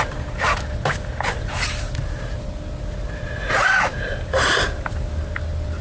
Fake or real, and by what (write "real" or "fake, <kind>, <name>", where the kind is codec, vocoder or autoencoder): real